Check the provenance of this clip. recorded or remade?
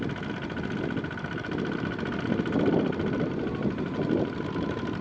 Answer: recorded